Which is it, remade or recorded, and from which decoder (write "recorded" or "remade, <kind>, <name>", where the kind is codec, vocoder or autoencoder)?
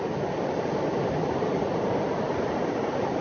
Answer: recorded